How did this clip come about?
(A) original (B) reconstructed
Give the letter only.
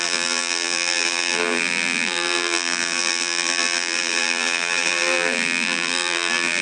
B